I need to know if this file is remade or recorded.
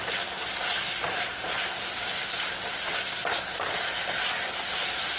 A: recorded